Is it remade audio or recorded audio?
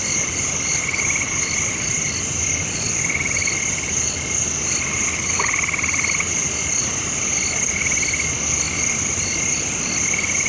recorded